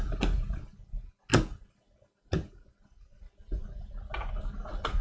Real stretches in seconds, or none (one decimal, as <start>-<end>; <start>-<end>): 0.0-5.0